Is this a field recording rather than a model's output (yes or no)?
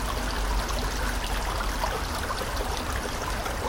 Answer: yes